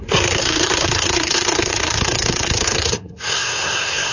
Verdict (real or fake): fake